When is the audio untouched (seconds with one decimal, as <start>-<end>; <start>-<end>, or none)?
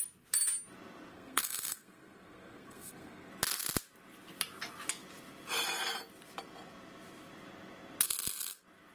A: 0.0-1.1; 3.3-8.9